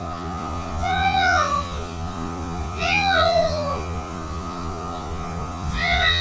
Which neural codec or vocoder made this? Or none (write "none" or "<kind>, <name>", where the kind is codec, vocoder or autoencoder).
vocoder, Vocos